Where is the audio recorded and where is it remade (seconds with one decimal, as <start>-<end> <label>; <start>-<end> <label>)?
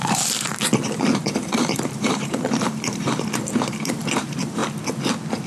0.0-0.5 remade; 0.5-1.2 recorded; 1.2-4.6 remade; 4.6-5.5 recorded